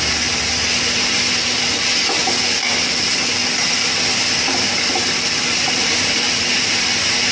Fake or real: real